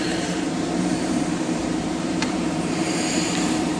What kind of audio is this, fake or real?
fake